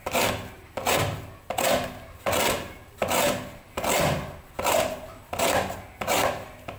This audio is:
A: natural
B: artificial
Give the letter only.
A